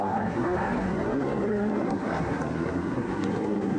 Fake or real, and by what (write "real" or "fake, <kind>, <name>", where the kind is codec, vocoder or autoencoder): fake, codec, SNAC